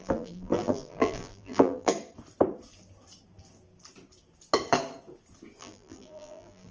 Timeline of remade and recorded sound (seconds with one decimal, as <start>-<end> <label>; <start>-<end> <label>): 0.0-1.9 remade; 1.9-5.6 recorded; 5.6-6.7 remade